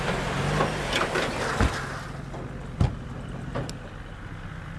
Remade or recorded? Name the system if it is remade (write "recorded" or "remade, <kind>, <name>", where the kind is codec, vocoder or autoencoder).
recorded